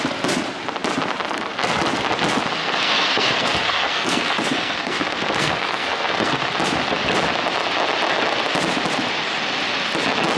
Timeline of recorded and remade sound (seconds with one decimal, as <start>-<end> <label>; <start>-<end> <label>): 0.0-2.6 recorded; 2.6-6.4 remade; 6.4-10.4 recorded